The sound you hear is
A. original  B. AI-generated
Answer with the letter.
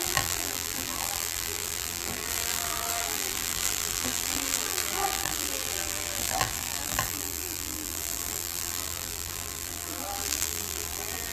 B